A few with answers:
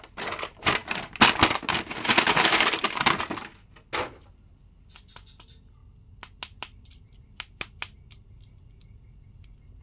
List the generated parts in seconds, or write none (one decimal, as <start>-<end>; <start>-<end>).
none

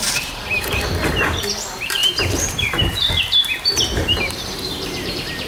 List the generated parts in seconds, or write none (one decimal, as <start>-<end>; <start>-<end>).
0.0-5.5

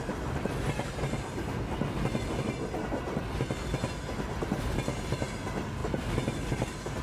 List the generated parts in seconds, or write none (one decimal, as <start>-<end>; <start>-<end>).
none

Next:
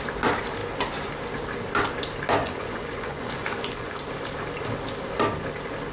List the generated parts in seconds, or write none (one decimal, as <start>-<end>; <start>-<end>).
2.4-3.9